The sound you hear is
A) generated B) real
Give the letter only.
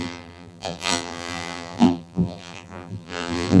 A